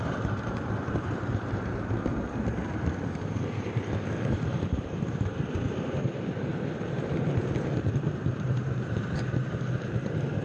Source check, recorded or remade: remade